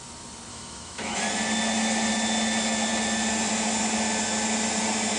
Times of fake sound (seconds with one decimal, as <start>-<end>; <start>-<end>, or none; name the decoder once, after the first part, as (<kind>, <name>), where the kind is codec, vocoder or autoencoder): 0.5-1.2 (autoencoder, DAC-VAE)